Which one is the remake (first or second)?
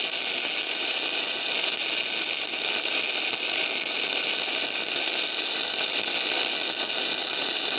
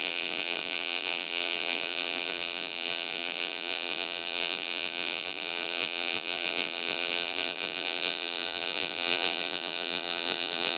second